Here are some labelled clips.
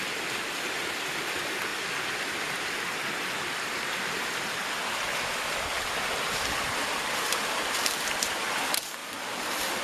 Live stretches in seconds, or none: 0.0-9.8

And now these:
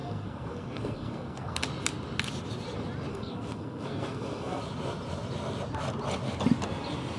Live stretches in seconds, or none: 1.6-3.1; 4.6-7.2